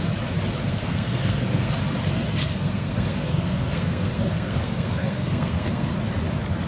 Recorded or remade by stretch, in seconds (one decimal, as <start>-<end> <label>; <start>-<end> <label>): 0.0-0.6 recorded; 0.6-1.7 remade; 1.7-2.3 recorded; 2.3-5.9 remade; 5.9-6.7 recorded